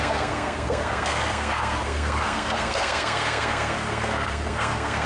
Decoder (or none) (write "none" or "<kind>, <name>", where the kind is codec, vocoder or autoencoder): codec, SNAC